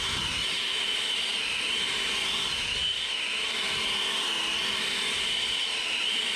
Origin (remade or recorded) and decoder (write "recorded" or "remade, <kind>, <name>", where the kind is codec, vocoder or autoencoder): recorded